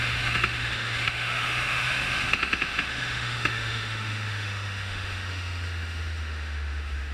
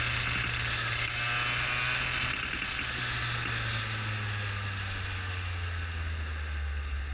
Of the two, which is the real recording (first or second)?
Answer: second